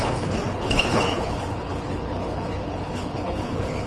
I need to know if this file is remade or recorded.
remade